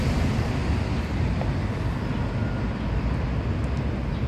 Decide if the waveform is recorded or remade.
recorded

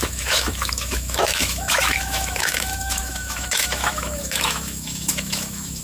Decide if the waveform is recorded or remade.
remade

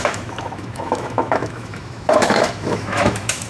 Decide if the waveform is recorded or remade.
remade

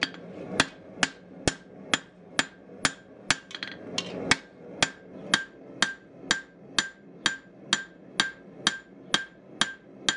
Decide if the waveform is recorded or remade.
recorded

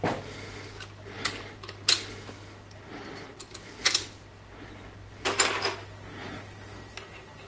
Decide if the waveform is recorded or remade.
recorded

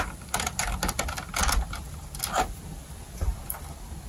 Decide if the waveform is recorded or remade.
recorded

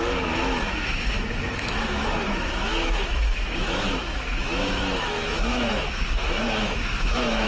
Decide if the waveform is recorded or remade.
remade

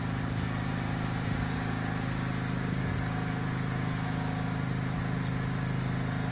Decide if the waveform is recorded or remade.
recorded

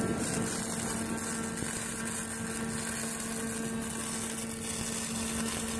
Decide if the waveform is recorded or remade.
recorded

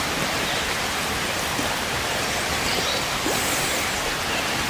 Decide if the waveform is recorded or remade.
recorded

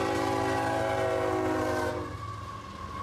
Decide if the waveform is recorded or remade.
recorded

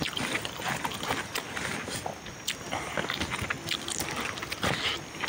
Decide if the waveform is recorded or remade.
recorded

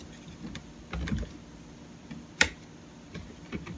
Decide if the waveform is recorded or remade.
recorded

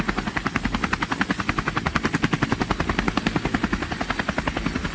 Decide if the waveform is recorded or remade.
recorded